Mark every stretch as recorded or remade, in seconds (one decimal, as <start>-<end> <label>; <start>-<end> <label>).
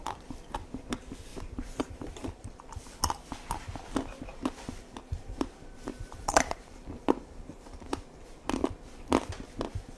0.0-1.3 recorded; 1.3-2.8 remade; 2.8-4.3 recorded; 4.3-8.2 remade; 8.2-10.0 recorded